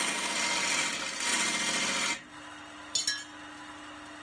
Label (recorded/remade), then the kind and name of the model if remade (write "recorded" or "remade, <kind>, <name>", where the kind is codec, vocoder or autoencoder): recorded